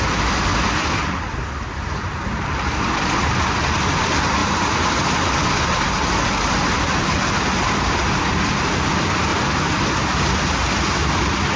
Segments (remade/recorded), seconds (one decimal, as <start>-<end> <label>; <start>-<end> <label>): 0.0-0.5 remade; 0.5-1.5 recorded; 1.5-9.3 remade; 9.3-11.6 recorded